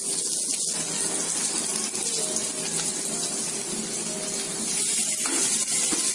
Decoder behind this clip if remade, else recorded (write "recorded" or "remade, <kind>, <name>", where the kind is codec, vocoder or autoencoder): recorded